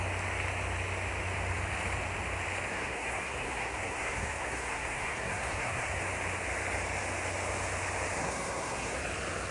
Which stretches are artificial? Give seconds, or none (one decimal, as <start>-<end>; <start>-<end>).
2.7-6.0; 8.2-9.0